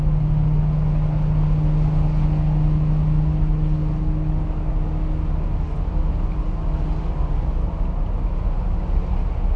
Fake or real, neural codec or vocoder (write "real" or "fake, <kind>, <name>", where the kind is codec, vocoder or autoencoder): real